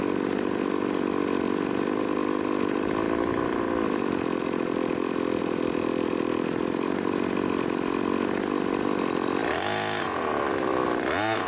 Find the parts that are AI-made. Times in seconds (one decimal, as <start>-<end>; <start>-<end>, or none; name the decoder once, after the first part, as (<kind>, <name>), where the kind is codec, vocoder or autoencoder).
none